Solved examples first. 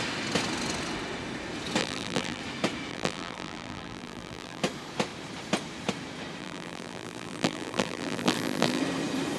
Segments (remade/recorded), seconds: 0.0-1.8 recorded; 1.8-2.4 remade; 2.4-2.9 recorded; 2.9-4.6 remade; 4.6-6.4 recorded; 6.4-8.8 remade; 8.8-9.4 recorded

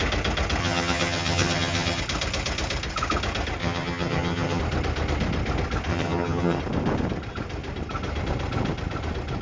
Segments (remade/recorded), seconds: 0.0-0.6 recorded; 0.6-2.0 remade; 2.0-3.6 recorded; 3.6-4.6 remade; 4.6-5.9 recorded; 5.9-6.6 remade; 6.6-9.4 recorded